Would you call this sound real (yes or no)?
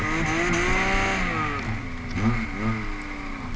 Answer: yes